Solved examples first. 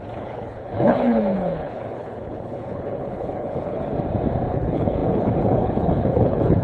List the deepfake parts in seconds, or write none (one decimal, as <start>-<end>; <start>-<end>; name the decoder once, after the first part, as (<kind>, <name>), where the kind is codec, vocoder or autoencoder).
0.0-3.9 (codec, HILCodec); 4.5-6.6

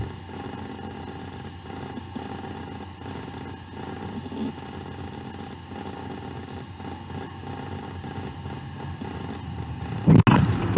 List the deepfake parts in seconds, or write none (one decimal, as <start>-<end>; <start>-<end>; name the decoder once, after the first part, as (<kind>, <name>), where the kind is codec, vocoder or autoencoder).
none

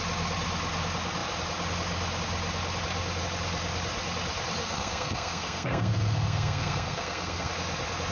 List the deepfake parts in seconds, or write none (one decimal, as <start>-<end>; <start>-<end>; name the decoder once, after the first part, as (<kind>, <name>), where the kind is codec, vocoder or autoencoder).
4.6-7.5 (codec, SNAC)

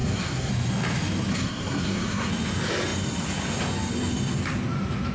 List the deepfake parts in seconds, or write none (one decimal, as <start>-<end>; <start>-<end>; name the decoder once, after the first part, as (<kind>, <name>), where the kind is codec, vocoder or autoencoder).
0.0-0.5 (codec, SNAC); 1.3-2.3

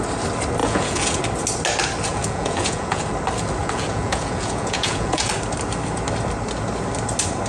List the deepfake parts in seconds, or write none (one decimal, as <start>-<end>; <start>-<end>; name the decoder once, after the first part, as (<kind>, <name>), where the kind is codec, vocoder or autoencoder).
0.6-1.2 (vocoder, Vocos); 2.1-3.0; 3.6-5.3

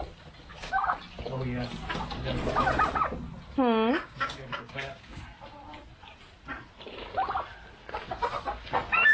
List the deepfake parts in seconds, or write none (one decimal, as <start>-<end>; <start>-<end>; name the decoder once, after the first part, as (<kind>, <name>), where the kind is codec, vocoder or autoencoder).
0.5-1.0 (codec, DAC); 3.9-5.2